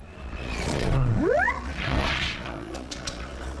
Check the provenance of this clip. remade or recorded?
remade